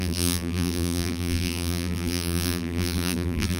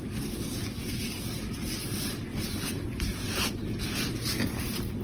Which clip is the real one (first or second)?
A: second